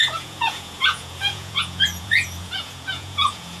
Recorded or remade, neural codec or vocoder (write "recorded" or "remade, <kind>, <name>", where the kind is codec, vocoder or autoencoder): remade, vocoder, Vocos